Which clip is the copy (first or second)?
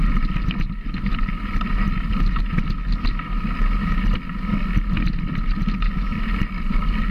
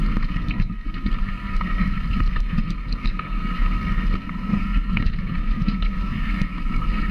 second